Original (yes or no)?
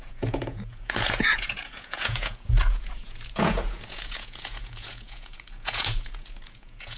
no